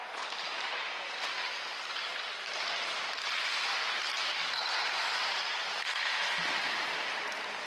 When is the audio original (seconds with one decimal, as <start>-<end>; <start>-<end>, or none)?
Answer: 0.9-7.7